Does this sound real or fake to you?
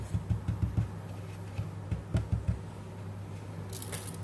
real